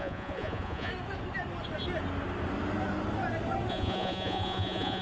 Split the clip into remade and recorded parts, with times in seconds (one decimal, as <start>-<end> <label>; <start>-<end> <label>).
0.0-0.9 remade; 0.9-3.7 recorded; 3.7-5.0 remade